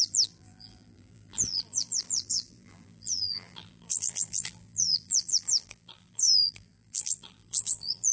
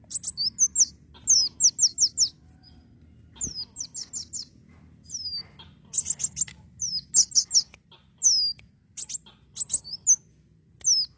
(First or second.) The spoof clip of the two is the first